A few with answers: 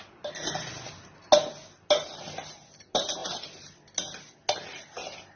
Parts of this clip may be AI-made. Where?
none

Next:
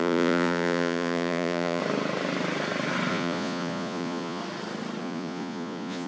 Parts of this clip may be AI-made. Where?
0.0-1.8 (vocoder, Vocos); 3.1-4.4; 5.0-6.1

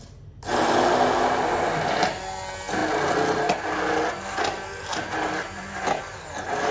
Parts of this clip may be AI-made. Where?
none

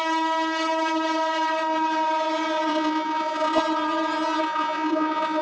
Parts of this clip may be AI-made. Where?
2.7-3.6 (vocoder, Vocos); 4.4-5.4